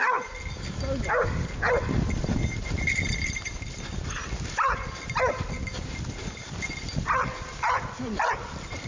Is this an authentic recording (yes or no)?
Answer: yes